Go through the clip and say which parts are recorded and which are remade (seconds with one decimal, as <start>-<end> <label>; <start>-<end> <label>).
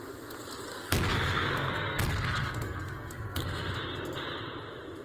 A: 0.0-0.7 recorded; 0.7-3.7 remade; 3.7-5.0 recorded